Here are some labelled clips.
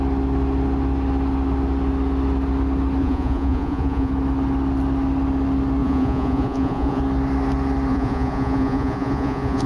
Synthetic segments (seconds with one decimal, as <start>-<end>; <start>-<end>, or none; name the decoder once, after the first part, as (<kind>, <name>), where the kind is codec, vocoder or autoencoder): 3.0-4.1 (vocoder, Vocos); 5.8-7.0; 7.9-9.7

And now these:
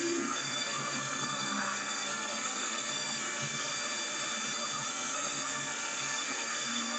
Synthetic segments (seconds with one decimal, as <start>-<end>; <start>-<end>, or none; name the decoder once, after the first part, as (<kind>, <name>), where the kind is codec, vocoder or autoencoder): 0.0-3.7 (codec, SNAC); 4.9-7.0

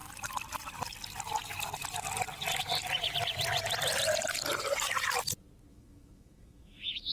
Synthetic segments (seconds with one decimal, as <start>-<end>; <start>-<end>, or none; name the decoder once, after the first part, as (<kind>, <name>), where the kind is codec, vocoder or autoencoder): 5.7-7.1 (autoencoder, DAC-VAE)

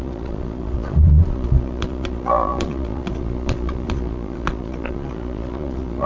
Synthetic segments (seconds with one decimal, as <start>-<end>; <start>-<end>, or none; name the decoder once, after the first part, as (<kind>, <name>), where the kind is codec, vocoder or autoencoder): 0.0-6.1 (vocoder, Vocos)

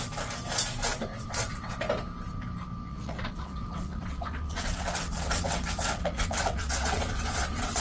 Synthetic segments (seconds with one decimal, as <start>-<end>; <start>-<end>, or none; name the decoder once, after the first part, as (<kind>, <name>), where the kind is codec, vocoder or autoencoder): 1.1-1.7 (vocoder, WaveNeXt); 2.9-7.8

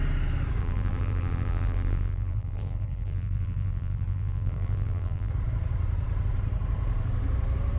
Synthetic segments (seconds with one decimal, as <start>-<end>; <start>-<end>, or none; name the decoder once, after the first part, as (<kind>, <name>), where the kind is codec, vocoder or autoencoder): 0.6-5.3 (vocoder, BigVGAN v2)

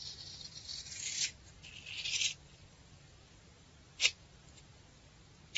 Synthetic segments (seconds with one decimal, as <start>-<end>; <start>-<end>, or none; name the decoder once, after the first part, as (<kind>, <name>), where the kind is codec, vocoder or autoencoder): 0.7-4.1 (vocoder, BigVGAN v2)

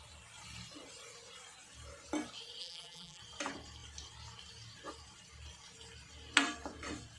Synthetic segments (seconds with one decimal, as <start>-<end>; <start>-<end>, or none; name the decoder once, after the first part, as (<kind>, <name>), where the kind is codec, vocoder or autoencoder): 2.6-3.2 (vocoder, BigVGAN v2)